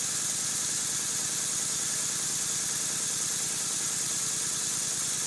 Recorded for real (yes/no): yes